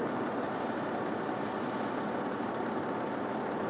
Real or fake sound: real